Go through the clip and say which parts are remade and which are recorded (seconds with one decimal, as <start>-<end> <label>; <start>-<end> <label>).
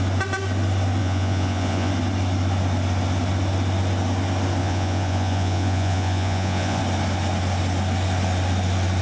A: 0.0-1.0 recorded; 1.0-1.9 remade; 1.9-4.6 recorded; 4.6-6.8 remade; 6.8-9.0 recorded